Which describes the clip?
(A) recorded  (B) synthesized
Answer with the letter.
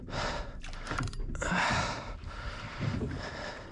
A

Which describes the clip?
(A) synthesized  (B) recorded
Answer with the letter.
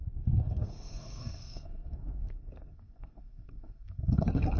A